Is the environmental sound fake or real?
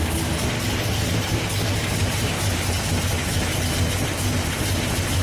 real